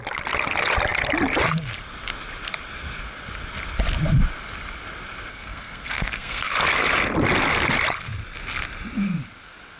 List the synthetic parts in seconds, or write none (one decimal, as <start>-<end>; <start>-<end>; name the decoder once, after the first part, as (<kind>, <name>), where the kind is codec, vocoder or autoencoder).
5.3-6.5 (codec, SNAC)

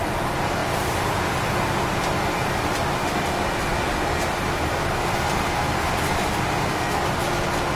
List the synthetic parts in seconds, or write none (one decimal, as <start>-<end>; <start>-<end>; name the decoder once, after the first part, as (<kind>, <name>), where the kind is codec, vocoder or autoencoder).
none

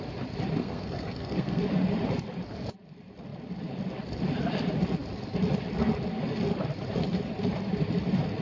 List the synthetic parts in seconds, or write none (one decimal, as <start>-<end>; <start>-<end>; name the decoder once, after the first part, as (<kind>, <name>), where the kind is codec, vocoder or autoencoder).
0.6-1.6 (codec, SNAC)

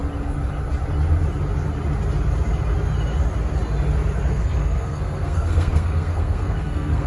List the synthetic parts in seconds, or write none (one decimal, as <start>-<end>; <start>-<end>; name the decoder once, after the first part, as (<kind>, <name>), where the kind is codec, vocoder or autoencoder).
4.3-7.1 (codec, SNAC)

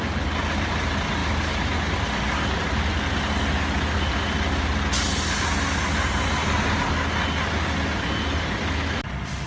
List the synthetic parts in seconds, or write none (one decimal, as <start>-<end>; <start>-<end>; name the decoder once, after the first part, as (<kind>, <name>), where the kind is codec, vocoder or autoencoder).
none

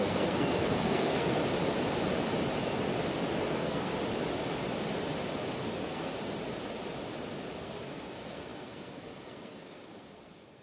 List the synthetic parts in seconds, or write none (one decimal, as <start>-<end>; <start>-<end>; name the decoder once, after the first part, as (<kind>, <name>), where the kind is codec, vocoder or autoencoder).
0.0-1.4 (codec, SNAC); 3.5-3.9; 5.6-6.1; 7.6-10.6